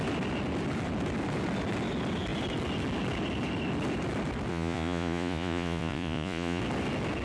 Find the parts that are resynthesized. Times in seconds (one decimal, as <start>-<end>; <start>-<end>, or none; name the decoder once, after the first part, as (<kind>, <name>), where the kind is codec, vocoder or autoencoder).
4.5-6.6 (vocoder, Vocos)